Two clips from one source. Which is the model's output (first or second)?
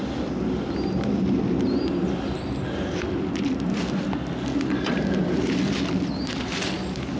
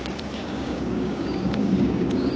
second